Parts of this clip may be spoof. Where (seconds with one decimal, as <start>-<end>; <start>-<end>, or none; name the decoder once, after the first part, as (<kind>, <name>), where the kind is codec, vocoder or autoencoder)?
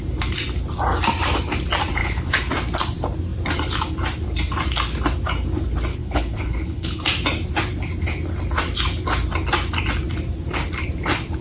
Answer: 2.0-2.5 (codec, HILCodec); 5.9-7.0